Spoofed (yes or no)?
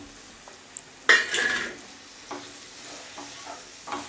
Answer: no